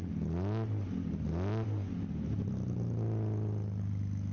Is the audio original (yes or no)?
yes